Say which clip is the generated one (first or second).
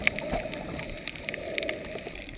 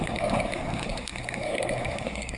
second